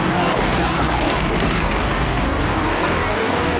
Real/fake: fake